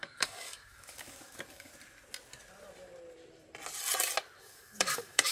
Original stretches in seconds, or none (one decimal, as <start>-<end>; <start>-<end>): 1.7-4.4